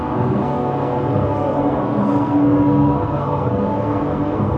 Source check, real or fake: fake